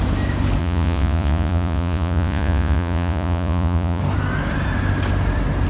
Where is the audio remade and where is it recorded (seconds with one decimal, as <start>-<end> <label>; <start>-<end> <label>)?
0.0-0.6 recorded; 0.6-4.0 remade; 4.0-5.7 recorded